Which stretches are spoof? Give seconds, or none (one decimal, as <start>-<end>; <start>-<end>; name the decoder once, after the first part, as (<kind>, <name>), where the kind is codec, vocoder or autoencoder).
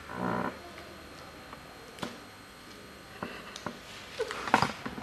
none